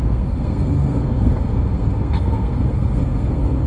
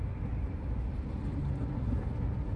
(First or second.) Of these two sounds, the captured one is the second